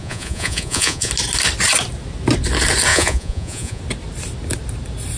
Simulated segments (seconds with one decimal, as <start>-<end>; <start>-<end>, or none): 0.0-1.1; 2.9-3.8